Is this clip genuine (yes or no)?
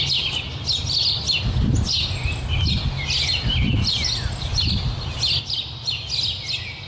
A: yes